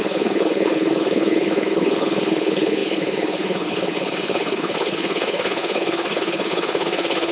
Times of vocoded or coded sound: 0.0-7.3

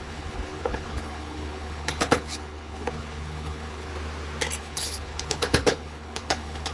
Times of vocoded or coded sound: 0.0-3.9; 4.6-6.7

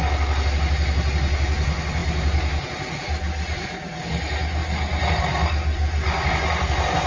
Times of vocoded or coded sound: none

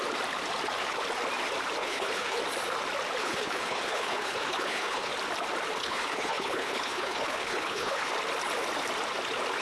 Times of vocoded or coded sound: 1.8-2.4; 3.2-5.1; 5.8-8.1

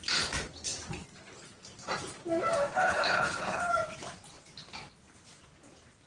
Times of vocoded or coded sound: 2.8-3.6

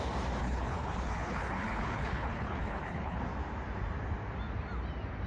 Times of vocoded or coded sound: 0.4-3.2